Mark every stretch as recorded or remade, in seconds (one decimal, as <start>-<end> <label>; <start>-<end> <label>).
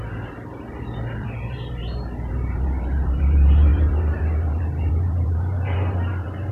0.0-6.5 remade